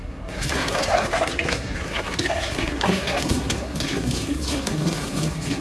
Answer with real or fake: fake